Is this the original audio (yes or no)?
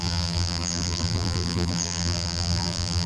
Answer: no